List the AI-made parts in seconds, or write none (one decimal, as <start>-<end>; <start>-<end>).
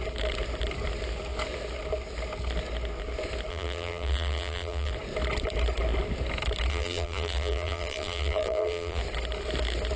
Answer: 3.5-4.9; 6.7-9.0